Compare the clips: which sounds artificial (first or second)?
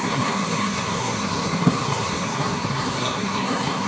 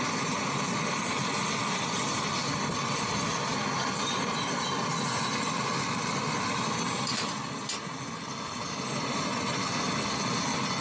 first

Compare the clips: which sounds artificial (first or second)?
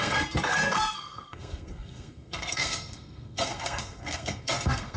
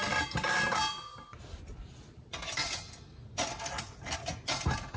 first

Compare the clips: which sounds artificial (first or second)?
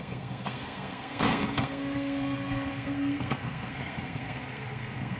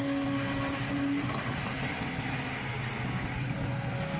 first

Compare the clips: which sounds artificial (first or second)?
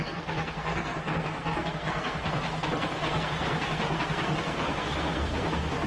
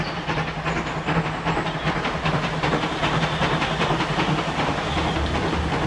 first